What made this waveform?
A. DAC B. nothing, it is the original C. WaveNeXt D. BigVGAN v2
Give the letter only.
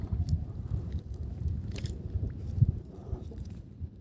D